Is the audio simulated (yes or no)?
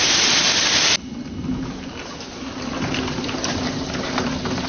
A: no